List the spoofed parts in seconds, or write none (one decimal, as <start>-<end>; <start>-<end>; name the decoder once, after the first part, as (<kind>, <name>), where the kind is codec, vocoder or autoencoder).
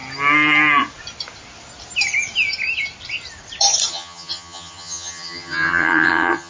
3.9-6.5 (vocoder, HiFi-GAN)